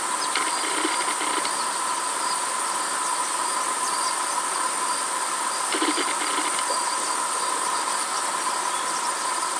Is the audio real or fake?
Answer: real